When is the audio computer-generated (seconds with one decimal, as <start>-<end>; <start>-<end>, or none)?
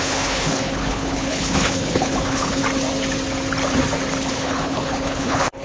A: 0.0-2.6; 4.3-5.6